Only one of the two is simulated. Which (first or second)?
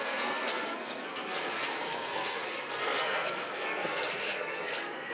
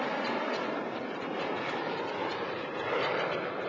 first